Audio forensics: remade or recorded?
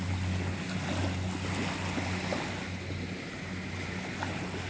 recorded